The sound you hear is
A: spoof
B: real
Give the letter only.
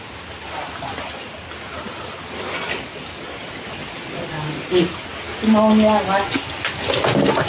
B